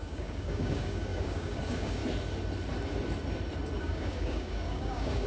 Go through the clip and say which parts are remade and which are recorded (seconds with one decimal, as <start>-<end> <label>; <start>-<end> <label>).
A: 0.0-2.0 remade; 2.0-3.8 recorded; 3.8-5.3 remade